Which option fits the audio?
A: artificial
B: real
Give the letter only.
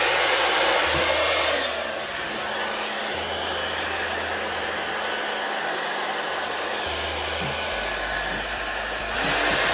B